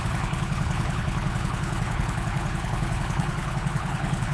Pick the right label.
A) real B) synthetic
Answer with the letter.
B